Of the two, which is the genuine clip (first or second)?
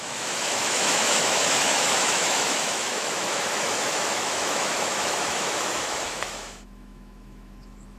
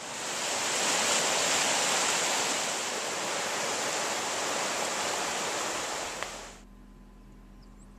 second